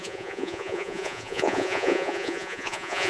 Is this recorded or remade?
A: remade